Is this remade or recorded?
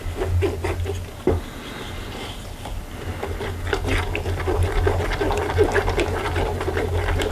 recorded